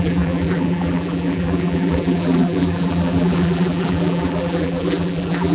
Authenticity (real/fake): fake